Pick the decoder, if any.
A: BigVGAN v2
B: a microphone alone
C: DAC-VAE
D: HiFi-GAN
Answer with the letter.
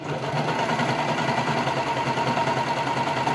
B